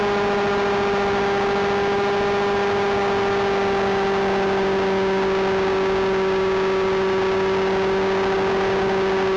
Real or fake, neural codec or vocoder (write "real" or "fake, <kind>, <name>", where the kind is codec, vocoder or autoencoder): real